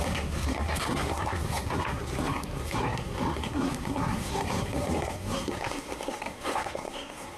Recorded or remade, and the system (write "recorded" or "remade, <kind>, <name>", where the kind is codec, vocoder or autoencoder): remade, codec, SNAC